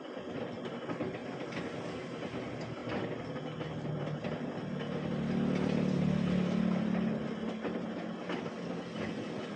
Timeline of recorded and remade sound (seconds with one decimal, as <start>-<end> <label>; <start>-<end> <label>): 0.0-9.6 recorded